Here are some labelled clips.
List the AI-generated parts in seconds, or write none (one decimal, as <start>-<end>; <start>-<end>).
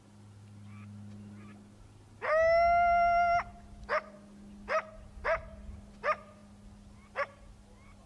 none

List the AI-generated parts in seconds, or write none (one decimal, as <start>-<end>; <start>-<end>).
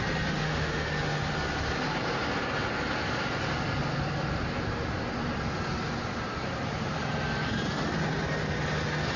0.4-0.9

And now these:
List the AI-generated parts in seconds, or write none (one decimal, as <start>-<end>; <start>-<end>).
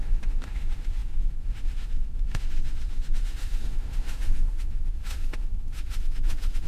0.0-6.7